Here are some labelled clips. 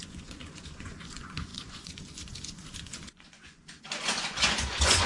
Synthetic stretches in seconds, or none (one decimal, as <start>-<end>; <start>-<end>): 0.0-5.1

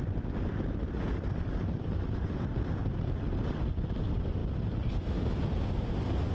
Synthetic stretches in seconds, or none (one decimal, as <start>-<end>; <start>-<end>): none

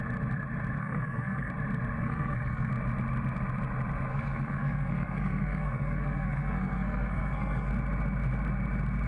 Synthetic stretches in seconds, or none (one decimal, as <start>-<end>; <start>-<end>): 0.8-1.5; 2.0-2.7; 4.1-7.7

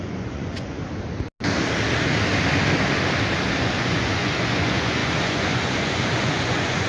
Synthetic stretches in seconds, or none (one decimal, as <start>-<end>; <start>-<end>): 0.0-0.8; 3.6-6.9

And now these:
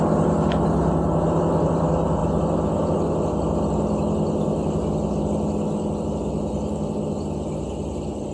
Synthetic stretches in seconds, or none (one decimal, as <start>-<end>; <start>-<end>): none

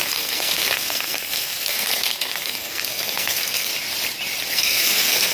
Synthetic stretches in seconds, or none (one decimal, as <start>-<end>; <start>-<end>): 0.0-3.7; 4.5-5.3

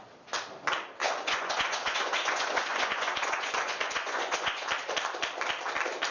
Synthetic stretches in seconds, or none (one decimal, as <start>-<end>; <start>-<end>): 1.0-4.7

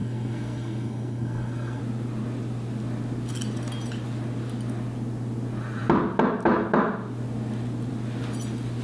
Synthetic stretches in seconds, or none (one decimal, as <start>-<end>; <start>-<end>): 0.0-1.8